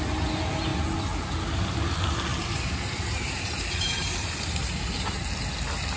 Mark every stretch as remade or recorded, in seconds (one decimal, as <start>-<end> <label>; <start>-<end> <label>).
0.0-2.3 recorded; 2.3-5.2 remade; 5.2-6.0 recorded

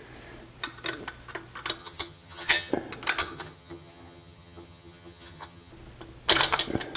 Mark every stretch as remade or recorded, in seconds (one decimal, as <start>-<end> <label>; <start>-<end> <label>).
0.0-1.8 recorded; 1.8-2.7 remade; 2.7-3.2 recorded; 3.2-5.7 remade; 5.7-7.0 recorded

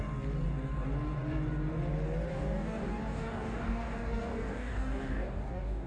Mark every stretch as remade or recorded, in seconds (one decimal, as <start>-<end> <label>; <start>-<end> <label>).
0.0-2.3 recorded; 2.3-5.9 remade

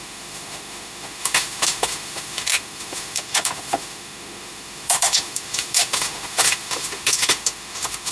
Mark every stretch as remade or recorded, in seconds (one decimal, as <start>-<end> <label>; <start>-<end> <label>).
0.0-8.1 remade

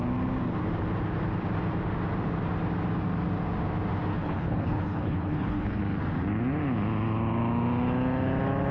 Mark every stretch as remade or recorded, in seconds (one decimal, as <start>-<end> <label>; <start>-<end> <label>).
0.0-4.1 recorded; 4.1-5.8 remade; 5.8-8.7 recorded

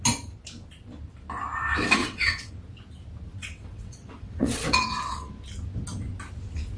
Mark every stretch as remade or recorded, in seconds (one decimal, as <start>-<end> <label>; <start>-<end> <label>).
0.0-2.0 recorded; 2.0-2.5 remade; 2.5-3.4 recorded; 3.4-5.3 remade; 5.3-6.8 recorded